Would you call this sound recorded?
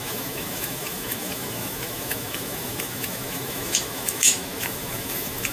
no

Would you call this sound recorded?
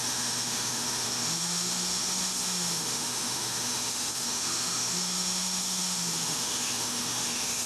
no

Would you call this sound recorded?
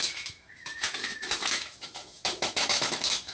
no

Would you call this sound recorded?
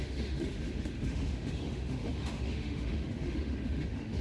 no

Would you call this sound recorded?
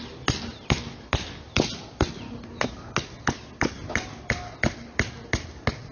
yes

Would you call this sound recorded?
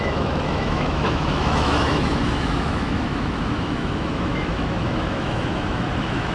no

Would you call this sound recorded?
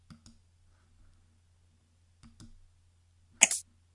yes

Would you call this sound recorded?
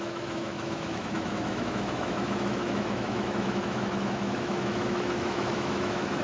no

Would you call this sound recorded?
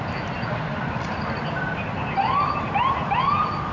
yes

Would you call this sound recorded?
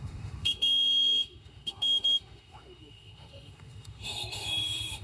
no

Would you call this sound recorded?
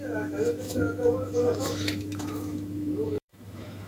no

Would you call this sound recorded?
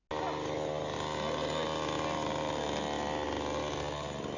yes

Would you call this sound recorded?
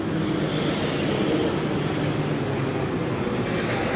yes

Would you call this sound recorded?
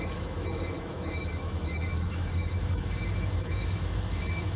no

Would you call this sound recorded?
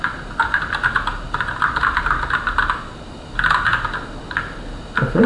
yes